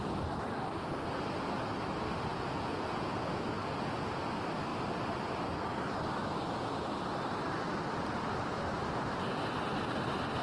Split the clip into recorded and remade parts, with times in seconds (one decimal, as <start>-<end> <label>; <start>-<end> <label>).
0.0-2.3 recorded; 2.3-4.2 remade; 4.2-10.4 recorded